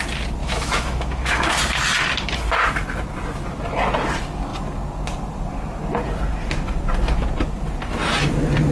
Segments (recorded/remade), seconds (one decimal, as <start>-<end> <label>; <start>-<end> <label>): 0.0-0.4 recorded; 0.4-1.6 remade; 1.6-8.7 recorded